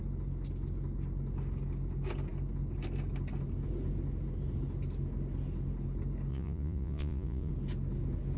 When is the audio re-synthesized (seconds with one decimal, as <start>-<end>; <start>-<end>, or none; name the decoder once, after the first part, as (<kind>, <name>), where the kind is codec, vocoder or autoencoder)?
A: 6.3-7.5 (vocoder, Vocos)